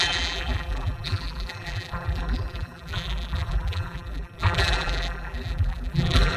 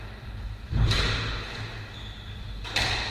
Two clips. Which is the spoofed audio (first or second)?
first